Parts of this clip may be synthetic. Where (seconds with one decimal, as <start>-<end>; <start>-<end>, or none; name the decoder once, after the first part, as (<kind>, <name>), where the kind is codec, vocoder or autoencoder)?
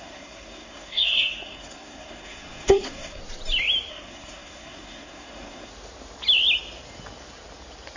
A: 0.0-3.2 (codec, SNAC); 3.9-5.7